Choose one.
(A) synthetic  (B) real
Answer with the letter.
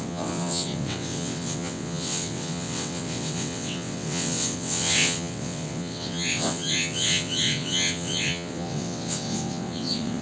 A